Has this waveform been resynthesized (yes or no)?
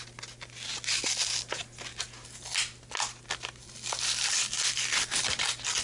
no